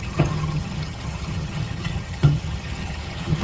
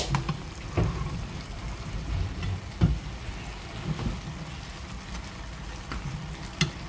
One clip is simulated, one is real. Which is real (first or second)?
second